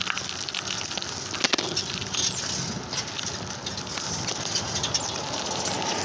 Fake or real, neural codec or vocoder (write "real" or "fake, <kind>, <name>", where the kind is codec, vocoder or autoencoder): real